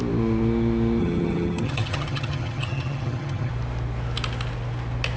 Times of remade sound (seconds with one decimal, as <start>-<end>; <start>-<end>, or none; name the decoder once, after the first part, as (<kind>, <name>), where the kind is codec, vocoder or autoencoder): 1.0-3.5 (vocoder, HiFi-GAN)

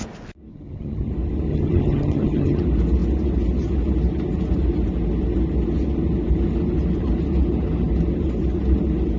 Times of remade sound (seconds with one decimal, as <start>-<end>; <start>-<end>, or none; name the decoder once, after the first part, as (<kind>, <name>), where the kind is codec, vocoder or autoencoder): 0.5-1.1 (vocoder, HiFi-GAN); 1.5-2.6

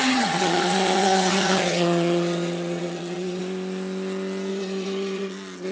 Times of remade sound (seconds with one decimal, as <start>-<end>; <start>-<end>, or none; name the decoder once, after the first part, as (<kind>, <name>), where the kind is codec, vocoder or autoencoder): 0.0-3.4 (vocoder, HiFi-GAN); 4.5-5.3

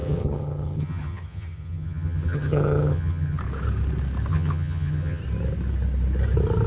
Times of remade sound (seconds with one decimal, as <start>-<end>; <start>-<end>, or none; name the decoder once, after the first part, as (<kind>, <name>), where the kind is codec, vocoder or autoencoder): 0.0-3.4 (vocoder, HiFi-GAN); 4.3-5.2